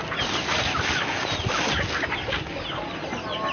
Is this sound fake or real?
real